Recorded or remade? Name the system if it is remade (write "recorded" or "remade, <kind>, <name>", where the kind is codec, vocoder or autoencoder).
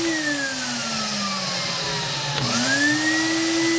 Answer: recorded